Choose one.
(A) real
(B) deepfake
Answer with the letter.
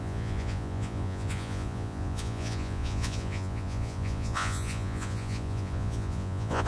B